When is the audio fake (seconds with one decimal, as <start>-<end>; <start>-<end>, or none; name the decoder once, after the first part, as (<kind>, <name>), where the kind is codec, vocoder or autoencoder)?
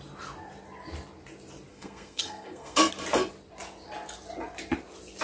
1.7-2.9 (codec, SNAC)